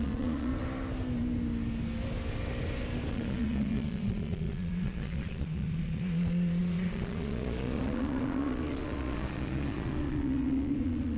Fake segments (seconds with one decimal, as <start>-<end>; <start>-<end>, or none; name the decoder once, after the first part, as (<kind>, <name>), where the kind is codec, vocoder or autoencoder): 0.0-0.5 (vocoder, Vocos); 3.1-11.2